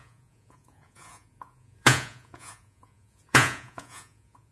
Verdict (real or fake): fake